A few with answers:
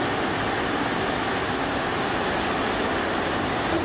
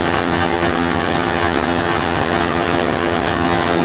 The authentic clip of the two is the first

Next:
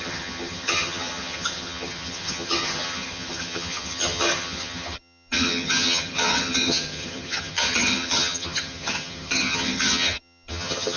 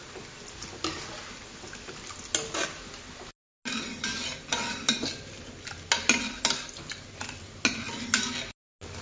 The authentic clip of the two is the second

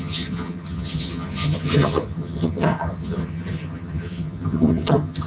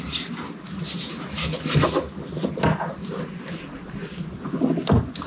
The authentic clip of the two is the second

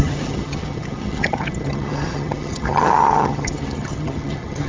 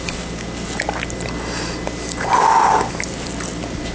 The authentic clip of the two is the second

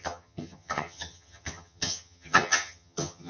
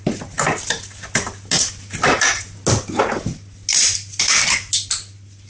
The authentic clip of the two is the second